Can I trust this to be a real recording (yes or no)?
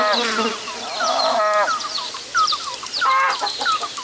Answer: no